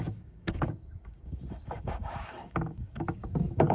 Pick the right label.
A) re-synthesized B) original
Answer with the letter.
A